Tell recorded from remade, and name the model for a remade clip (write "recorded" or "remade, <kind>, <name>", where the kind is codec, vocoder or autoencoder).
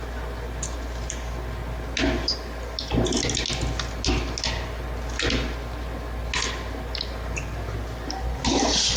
recorded